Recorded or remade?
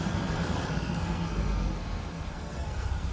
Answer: remade